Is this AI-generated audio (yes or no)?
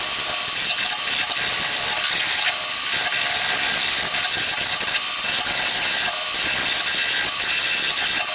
no